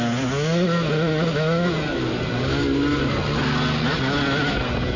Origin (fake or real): real